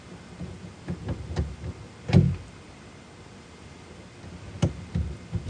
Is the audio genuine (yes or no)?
yes